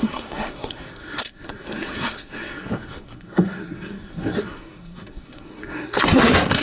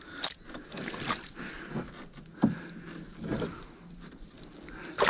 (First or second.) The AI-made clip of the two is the first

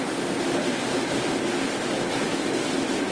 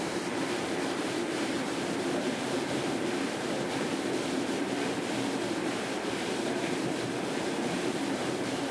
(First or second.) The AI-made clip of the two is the second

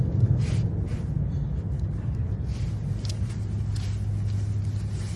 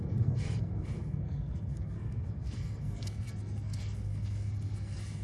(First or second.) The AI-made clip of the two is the second